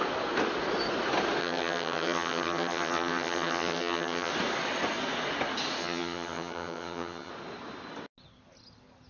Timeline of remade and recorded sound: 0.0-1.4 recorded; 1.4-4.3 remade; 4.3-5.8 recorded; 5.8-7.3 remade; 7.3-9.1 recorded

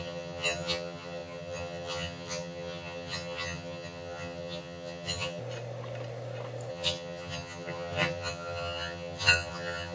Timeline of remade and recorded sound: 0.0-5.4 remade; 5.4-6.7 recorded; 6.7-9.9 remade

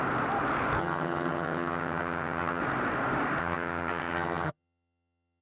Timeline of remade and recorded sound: 0.0-0.8 recorded; 0.8-2.6 remade; 2.6-3.4 recorded; 3.4-5.4 remade

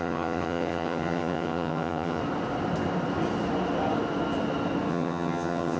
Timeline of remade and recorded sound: 0.0-2.2 remade; 2.2-4.9 recorded; 4.9-5.8 remade

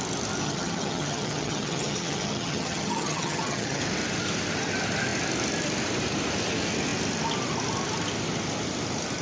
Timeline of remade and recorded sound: 0.0-0.4 recorded; 0.4-3.8 remade; 3.8-9.2 recorded

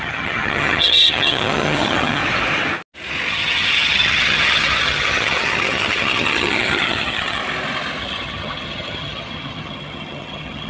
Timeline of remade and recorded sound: 0.0-2.2 remade; 2.2-3.3 recorded; 3.3-7.4 remade; 7.4-8.0 recorded; 8.0-10.7 remade

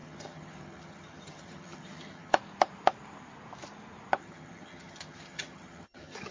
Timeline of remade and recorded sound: 0.0-2.3 remade; 2.3-4.2 recorded; 4.2-6.3 remade